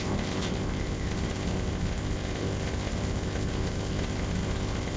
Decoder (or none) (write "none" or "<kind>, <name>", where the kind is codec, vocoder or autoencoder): codec, ZipCodec